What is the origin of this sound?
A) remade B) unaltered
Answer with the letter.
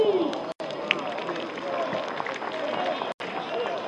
B